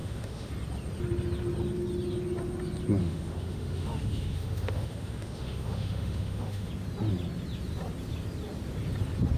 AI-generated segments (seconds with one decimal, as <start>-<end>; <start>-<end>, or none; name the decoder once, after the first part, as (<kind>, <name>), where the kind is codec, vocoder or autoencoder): 0.0-0.5 (autoencoder, DAC-VAE); 3.0-6.7